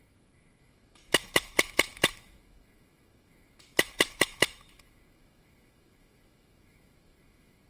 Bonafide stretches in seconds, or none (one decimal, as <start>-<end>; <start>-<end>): none